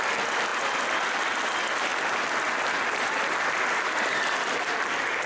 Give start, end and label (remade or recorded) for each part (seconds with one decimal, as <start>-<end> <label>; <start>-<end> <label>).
0.0-5.3 recorded